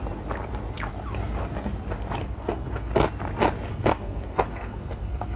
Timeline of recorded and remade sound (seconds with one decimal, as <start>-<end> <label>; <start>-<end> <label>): 0.0-2.2 recorded; 2.2-2.9 remade; 2.9-3.7 recorded; 3.7-5.4 remade

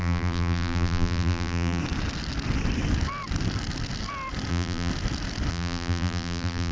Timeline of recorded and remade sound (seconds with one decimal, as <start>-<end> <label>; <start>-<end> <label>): 0.0-1.8 remade; 1.8-4.5 recorded; 4.5-4.9 remade; 4.9-5.5 recorded; 5.5-6.7 remade